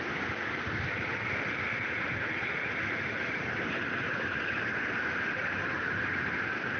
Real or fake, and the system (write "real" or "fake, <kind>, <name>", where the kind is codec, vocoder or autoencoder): real